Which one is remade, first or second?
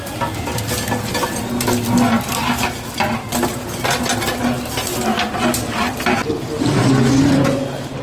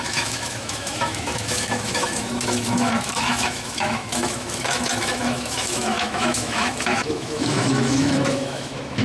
second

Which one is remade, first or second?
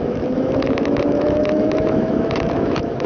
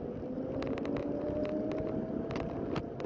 first